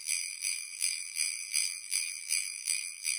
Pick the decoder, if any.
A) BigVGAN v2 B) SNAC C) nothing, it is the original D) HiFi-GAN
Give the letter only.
A